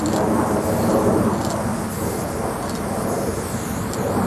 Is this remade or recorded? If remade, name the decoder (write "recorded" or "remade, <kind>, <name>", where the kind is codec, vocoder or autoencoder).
recorded